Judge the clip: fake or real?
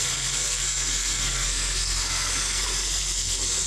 fake